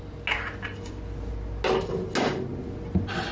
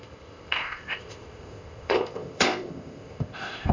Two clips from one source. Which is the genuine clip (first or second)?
first